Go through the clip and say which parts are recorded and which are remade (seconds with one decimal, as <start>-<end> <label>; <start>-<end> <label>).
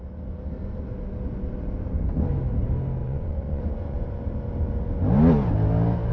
0.0-3.0 recorded; 3.0-4.2 remade; 4.2-6.1 recorded